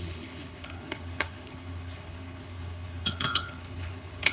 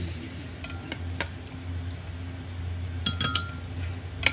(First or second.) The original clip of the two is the second